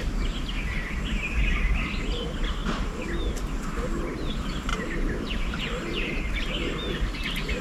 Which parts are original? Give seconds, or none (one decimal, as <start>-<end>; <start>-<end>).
0.0-2.6; 3.1-4.7; 6.5-7.6